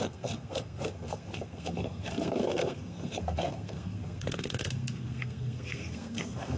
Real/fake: fake